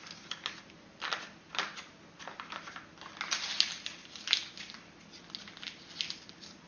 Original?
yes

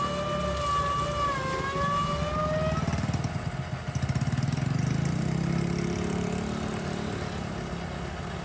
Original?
yes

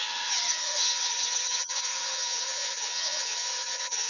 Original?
no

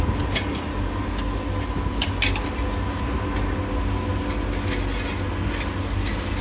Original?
yes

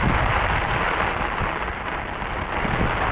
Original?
yes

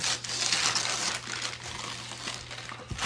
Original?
yes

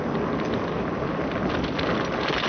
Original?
yes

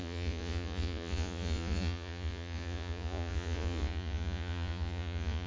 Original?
no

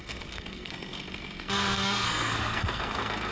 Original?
no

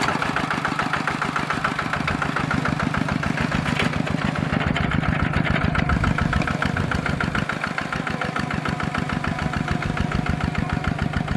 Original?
yes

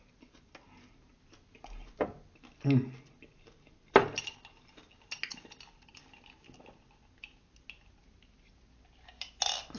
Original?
yes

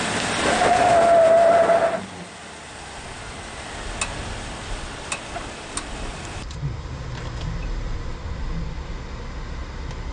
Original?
yes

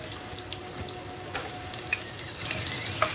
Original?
yes